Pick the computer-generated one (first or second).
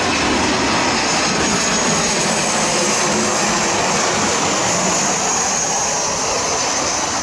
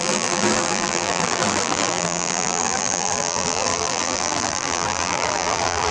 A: second